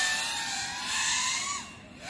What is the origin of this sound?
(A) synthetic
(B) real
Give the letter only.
B